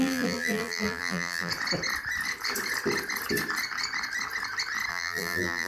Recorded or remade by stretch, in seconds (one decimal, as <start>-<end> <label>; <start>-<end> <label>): 0.0-1.5 remade; 1.5-4.9 recorded; 4.9-5.7 remade